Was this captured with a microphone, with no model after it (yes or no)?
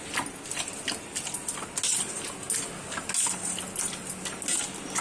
yes